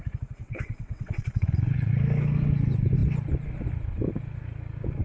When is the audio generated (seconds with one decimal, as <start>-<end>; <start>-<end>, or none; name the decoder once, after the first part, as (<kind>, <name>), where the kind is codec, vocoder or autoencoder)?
0.4-1.9 (vocoder, WaveNeXt)